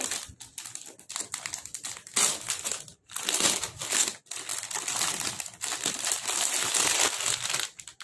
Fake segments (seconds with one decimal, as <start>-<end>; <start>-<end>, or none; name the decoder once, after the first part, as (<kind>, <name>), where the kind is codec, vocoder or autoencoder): none